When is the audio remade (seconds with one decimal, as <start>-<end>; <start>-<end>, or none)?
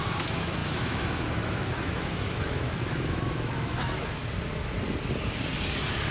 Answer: 0.0-4.2